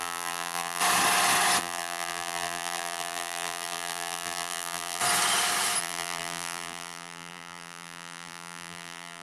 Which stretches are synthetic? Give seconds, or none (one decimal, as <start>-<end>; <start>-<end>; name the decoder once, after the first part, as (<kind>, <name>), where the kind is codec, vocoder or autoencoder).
0.0-0.8 (vocoder, BigVGAN v2); 1.6-5.0; 5.8-9.2